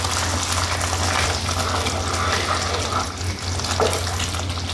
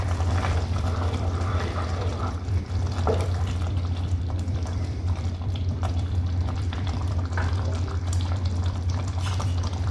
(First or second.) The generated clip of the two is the second